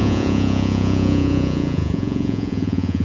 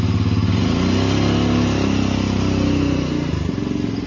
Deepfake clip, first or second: first